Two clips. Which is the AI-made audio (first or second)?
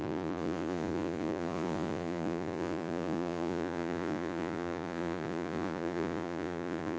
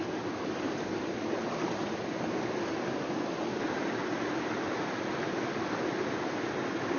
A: first